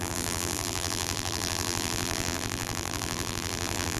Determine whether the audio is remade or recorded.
remade